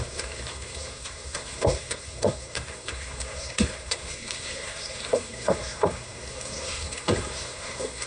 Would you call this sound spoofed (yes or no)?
yes